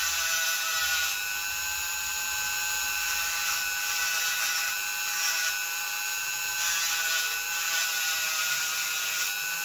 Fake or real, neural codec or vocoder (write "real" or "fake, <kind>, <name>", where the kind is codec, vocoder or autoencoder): real